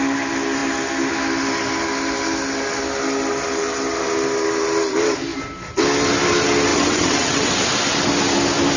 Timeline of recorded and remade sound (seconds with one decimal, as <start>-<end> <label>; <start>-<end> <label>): 0.0-6.7 recorded; 6.7-7.5 remade; 7.5-8.8 recorded